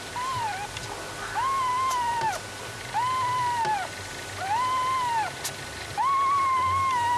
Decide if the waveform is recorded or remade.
recorded